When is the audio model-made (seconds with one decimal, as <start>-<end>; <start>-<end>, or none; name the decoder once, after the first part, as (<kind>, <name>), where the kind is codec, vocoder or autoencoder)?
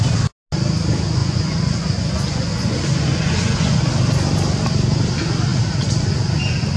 1.2-3.8 (vocoder, Vocos)